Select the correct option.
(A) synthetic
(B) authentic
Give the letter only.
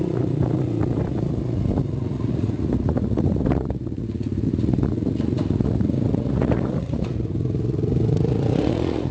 A